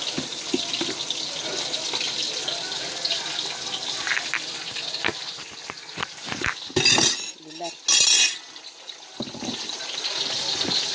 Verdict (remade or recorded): recorded